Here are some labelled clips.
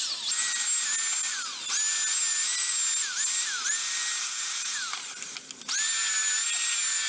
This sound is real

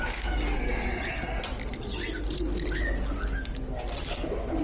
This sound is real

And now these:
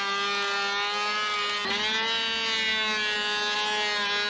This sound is real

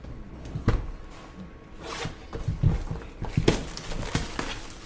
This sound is real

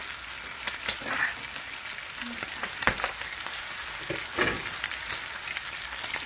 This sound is real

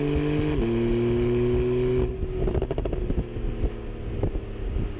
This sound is real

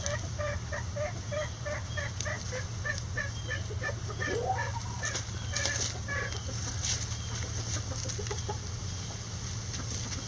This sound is real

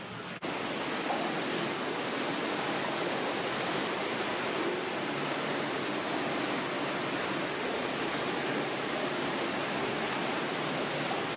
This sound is real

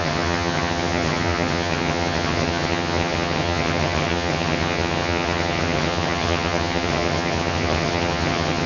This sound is fake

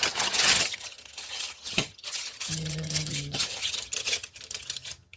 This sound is fake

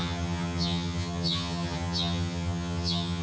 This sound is fake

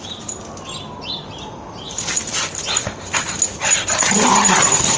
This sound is real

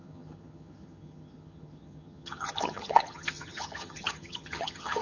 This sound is fake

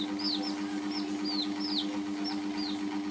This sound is real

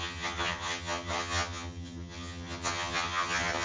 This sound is fake